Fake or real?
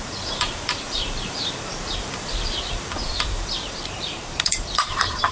fake